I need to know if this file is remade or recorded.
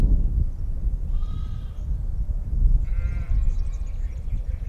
recorded